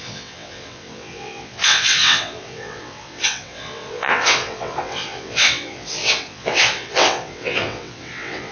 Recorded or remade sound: remade